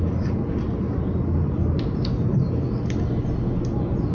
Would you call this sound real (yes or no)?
yes